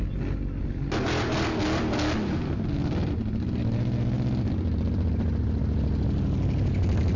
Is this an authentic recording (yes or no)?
yes